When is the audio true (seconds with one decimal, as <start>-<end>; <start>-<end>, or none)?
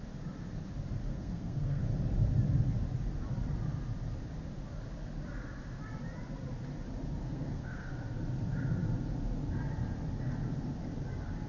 0.0-1.1; 1.8-7.2; 7.9-11.5